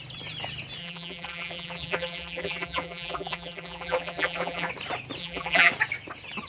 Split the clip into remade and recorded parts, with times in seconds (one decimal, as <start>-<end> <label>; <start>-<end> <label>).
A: 0.0-0.8 recorded; 0.8-4.7 remade; 4.7-5.2 recorded; 5.2-5.7 remade; 5.7-6.5 recorded